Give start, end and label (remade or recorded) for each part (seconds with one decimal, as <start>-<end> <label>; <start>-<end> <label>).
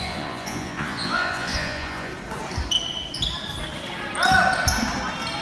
0.0-2.1 remade; 2.1-5.4 recorded